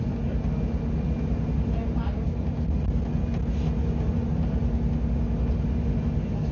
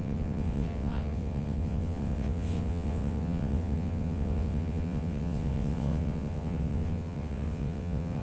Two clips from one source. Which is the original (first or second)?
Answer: first